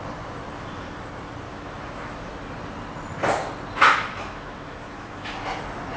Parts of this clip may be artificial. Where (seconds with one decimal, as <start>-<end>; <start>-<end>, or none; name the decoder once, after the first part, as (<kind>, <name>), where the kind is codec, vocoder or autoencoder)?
1.5-2.3 (autoencoder, DAC-VAE); 3.9-5.3